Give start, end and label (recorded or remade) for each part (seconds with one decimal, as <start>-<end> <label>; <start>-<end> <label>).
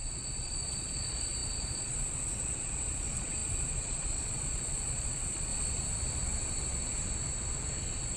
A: 0.0-5.5 remade; 5.5-8.2 recorded